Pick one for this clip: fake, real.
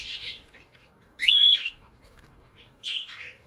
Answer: fake